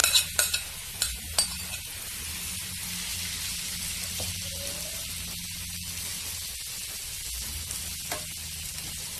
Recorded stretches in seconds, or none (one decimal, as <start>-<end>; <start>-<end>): 0.0-9.2